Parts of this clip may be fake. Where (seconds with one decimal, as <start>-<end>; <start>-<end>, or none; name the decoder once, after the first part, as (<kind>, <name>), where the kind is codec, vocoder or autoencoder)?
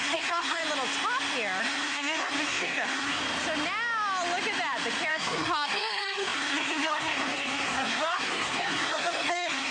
0.0-0.6 (codec, SNAC); 1.6-3.2; 5.1-9.7